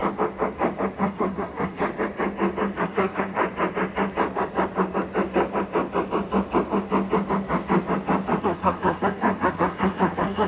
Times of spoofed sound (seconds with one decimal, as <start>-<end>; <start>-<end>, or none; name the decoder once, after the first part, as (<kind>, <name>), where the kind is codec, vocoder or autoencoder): 1.0-1.8 (codec, SNAC); 2.8-3.4; 8.4-10.5